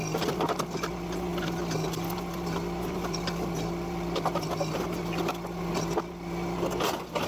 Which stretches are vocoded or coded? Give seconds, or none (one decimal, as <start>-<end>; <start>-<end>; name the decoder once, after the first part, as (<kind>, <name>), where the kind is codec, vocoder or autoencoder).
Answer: none